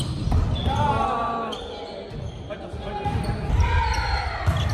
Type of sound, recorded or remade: recorded